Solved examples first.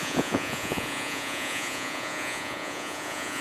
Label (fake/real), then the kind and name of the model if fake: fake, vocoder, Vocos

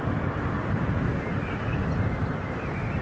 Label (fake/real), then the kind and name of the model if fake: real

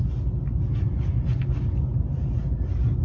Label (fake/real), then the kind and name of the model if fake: real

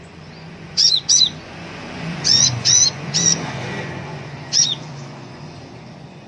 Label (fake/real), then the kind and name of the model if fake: fake, vocoder, Vocos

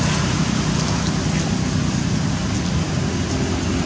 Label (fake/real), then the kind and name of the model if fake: real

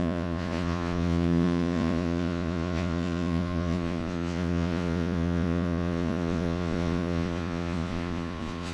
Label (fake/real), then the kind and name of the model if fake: fake, vocoder, Vocos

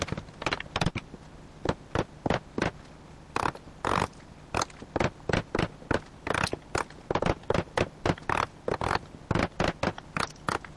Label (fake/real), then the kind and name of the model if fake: real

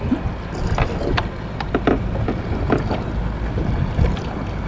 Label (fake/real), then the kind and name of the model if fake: real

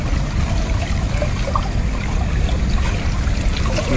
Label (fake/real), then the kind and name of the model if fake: real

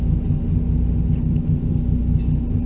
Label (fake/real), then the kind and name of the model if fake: real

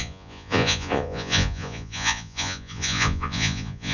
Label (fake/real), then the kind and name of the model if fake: fake, vocoder, Vocos